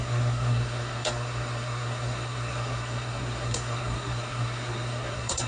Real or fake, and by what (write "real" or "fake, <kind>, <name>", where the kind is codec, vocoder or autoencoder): fake, codec, SNAC